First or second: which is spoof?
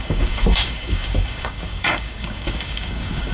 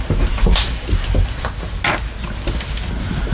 first